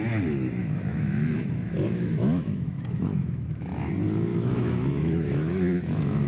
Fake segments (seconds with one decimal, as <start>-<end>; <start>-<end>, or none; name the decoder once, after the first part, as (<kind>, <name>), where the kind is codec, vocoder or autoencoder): 0.6-3.9 (autoencoder, DAC-VAE); 4.3-6.3